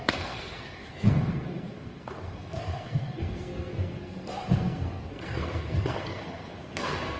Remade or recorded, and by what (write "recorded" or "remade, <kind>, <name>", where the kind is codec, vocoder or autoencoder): remade, codec, SNAC